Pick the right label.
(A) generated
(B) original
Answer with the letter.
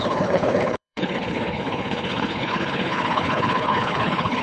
A